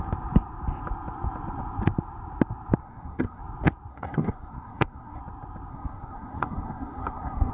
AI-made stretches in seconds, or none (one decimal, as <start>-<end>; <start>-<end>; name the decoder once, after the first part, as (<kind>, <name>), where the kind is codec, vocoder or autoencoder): 2.8-3.4 (codec, SNAC); 3.9-5.2; 5.7-7.5